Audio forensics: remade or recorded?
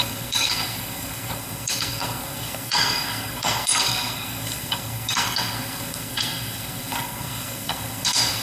remade